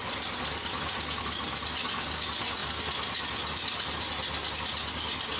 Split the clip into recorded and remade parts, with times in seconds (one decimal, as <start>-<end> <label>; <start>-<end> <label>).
0.0-5.4 recorded